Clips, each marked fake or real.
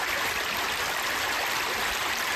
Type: real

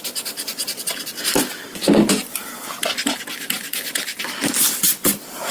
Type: real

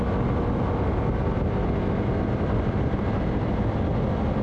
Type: real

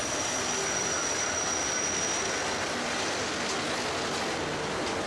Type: real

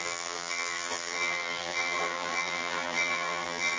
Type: fake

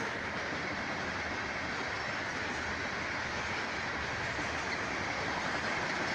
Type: real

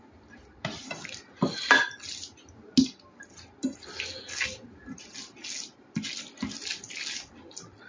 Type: real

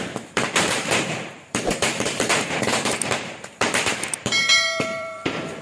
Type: fake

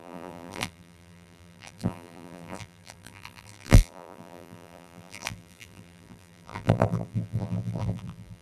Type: fake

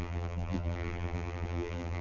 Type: fake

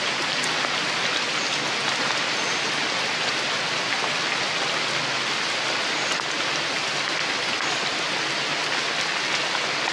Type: real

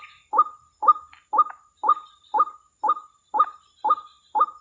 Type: real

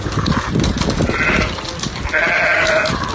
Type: real